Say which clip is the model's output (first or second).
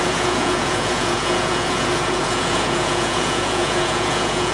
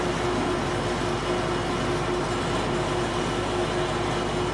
first